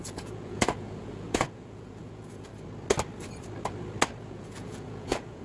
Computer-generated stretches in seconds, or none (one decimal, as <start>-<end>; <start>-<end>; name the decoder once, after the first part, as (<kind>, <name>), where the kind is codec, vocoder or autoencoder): 0.0-2.5 (vocoder, Vocos); 4.2-5.4